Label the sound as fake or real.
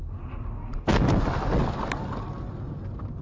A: real